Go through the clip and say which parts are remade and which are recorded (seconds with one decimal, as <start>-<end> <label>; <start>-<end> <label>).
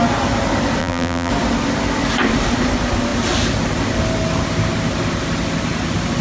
0.0-0.8 recorded; 0.8-1.3 remade; 1.3-6.2 recorded